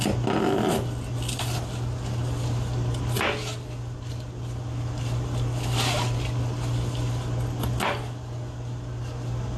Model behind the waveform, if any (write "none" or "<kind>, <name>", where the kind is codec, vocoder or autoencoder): none